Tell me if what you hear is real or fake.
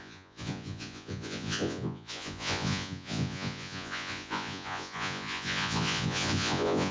fake